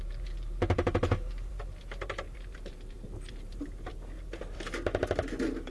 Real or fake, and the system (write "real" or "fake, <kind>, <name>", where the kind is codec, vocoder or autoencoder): fake, vocoder, BigVGAN v2